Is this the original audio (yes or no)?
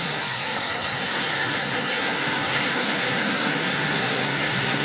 no